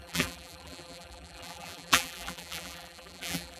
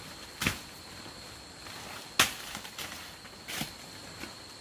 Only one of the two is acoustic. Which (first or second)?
second